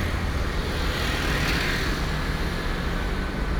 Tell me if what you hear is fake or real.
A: real